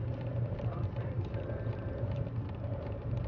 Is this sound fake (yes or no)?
yes